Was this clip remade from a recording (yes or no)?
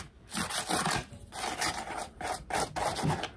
no